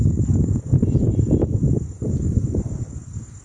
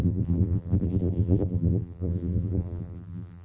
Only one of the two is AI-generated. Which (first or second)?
second